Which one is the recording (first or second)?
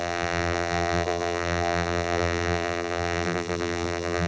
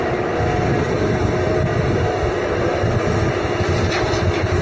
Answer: second